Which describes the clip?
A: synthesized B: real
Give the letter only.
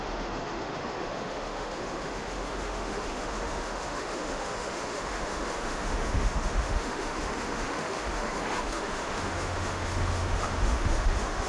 A